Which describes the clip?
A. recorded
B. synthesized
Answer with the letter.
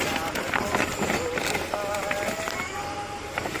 A